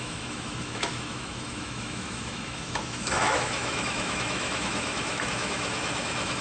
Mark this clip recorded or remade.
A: remade